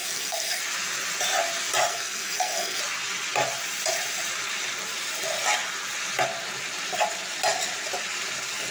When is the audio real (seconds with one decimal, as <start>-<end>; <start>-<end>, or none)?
0.6-1.9; 2.8-8.7